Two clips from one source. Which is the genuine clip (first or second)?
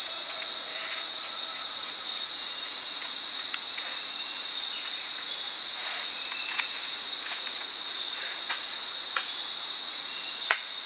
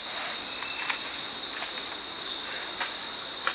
second